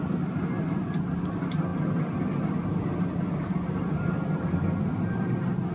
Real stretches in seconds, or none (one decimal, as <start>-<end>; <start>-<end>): 0.0-5.7